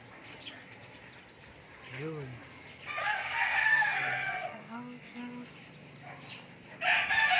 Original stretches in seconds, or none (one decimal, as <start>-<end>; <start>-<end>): 0.0-3.0; 5.2-7.4